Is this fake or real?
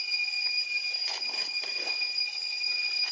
real